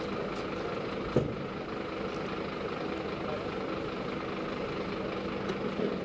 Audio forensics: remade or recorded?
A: recorded